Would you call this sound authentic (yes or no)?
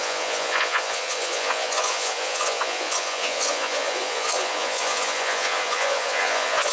no